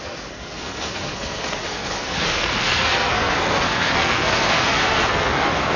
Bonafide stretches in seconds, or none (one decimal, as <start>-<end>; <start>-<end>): none